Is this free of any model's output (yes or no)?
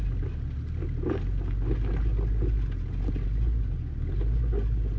yes